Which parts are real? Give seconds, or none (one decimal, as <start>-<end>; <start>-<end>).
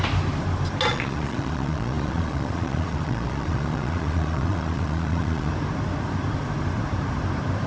0.0-0.9; 5.5-7.7